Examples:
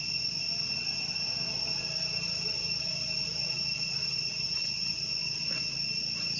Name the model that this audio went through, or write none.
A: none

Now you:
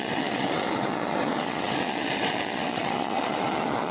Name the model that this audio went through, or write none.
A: vocoder, Vocos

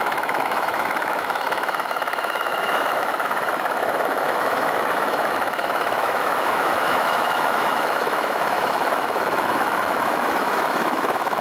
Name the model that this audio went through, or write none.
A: autoencoder, DAC-VAE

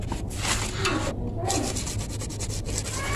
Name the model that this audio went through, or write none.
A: none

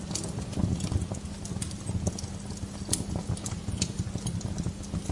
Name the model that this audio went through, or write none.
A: none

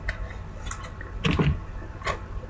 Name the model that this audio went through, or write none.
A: vocoder, BigVGAN v2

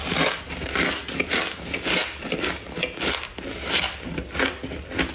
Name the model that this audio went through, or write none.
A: none